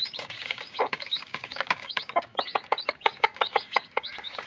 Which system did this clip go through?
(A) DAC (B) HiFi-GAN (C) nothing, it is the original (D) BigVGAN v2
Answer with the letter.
A